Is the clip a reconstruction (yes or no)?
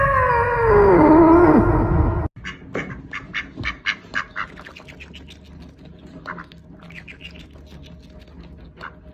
no